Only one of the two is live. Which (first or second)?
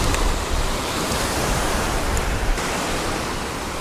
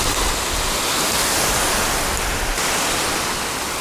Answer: second